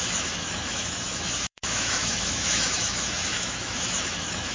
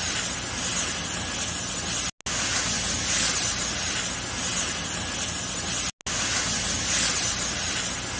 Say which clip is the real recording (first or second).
second